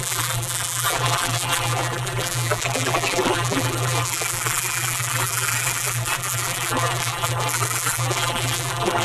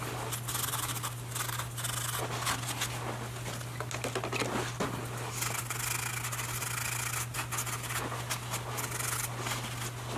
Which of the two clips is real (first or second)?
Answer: second